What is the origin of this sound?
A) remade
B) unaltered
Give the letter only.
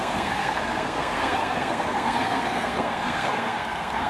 A